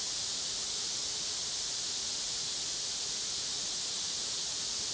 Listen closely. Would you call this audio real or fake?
fake